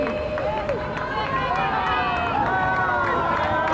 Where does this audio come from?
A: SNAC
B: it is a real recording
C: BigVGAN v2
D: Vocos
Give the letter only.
B